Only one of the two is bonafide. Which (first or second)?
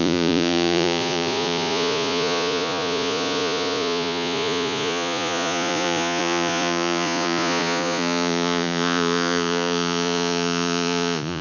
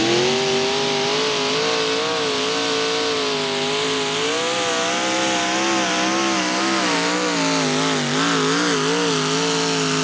second